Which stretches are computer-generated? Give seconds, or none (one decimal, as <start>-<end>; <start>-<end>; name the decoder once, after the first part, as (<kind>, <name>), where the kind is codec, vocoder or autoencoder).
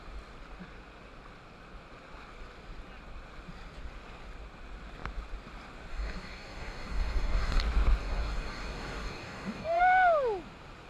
5.9-7.6 (codec, DAC); 8.0-9.8